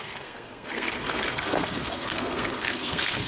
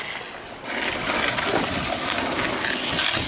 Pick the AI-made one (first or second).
first